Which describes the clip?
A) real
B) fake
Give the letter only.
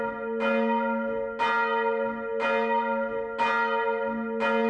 A